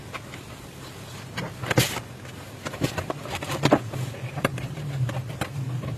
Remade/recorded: remade